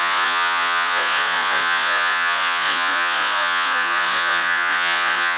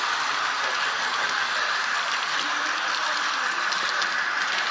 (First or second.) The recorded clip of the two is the second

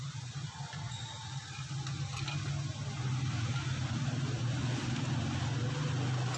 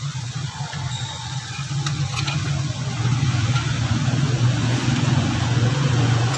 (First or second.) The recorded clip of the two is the first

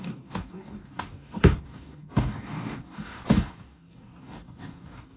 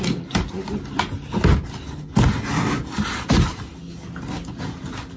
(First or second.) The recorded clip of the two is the second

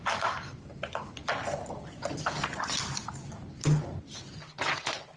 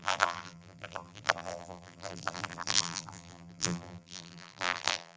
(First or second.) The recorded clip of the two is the first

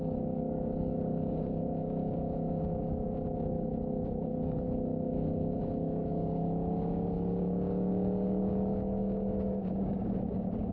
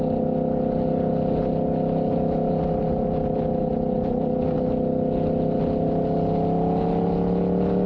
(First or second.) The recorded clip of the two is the second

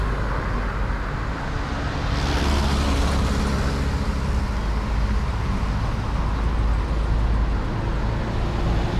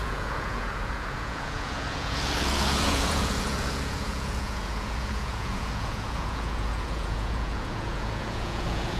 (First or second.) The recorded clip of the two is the first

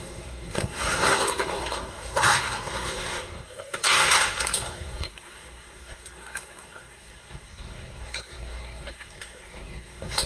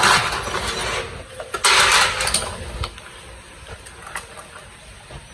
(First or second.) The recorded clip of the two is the second